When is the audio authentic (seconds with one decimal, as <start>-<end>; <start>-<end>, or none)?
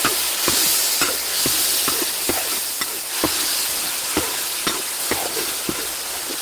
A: 0.0-6.4